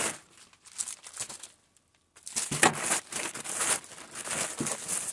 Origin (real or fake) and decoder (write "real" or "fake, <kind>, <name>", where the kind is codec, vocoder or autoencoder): real